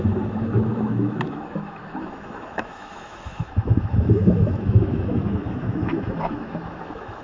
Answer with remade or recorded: remade